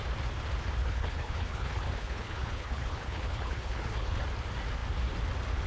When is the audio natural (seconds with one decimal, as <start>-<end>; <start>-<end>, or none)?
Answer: 0.0-0.8; 4.2-5.7